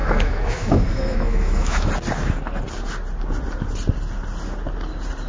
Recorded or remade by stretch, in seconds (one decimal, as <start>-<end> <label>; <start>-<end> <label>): 0.0-1.9 remade; 1.9-5.3 recorded